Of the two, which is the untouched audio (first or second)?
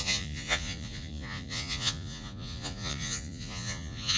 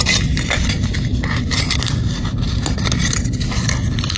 second